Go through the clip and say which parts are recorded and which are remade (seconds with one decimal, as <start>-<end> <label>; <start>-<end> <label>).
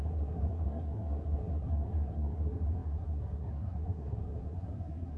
0.0-5.2 remade